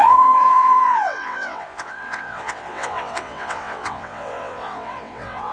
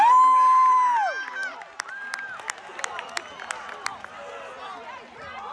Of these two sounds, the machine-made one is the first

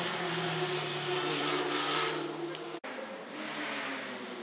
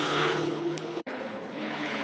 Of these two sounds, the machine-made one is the second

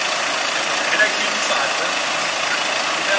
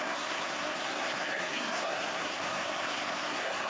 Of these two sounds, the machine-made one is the second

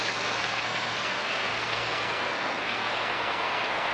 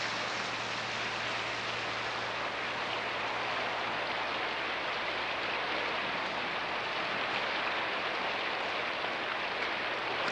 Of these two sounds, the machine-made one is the first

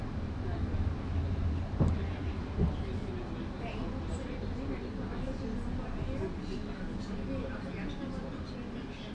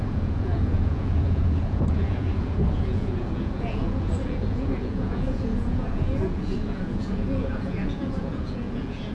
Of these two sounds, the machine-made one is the second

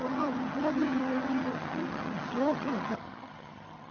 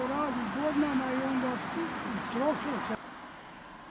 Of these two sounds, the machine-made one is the first